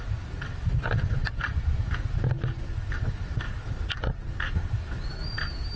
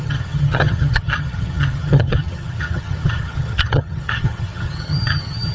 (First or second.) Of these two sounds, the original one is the first